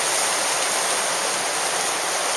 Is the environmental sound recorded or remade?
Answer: recorded